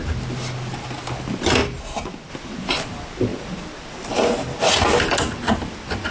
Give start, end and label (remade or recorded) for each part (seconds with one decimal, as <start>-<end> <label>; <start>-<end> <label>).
0.0-6.1 recorded